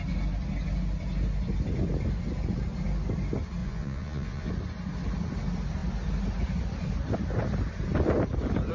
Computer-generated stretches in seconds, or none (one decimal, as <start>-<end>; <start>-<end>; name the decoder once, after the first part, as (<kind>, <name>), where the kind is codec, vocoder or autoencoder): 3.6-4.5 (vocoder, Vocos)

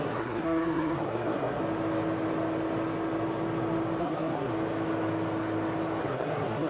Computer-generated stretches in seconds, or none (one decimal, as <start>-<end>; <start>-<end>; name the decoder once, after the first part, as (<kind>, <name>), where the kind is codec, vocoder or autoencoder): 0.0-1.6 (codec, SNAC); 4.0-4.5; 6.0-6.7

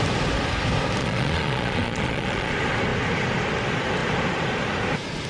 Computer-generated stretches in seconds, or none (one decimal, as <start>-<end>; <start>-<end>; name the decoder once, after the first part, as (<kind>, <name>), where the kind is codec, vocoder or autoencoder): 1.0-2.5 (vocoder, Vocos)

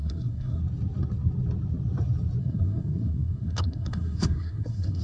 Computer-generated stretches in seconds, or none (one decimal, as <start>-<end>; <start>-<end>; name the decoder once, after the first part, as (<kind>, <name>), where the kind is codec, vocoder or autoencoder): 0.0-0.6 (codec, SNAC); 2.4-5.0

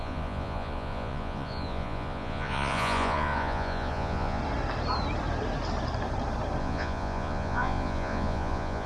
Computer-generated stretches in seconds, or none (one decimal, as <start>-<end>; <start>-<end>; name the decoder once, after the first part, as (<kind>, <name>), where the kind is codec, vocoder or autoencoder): 0.0-4.4 (vocoder, Vocos); 6.6-8.9

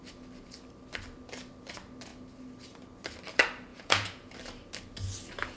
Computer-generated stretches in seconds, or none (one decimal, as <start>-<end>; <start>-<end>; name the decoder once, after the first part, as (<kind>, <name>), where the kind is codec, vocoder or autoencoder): 3.7-4.3 (vocoder, Vocos)